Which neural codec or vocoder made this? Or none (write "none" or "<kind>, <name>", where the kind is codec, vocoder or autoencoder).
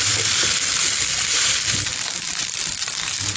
vocoder, BigVGAN v2